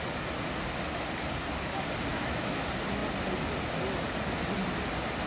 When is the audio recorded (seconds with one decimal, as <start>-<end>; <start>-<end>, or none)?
0.0-2.1; 2.6-5.3